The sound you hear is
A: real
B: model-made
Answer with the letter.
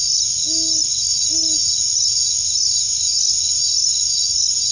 A